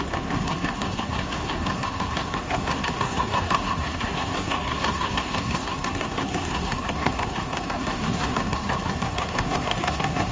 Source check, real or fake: fake